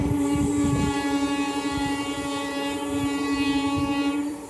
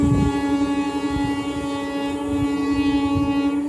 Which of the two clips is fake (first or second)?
first